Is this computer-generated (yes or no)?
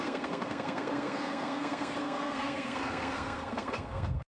yes